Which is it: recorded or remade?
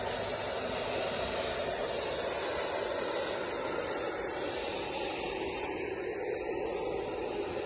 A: recorded